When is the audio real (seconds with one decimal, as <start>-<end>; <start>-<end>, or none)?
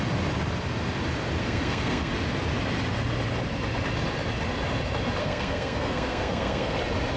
0.0-1.4; 2.1-5.2; 6.8-7.2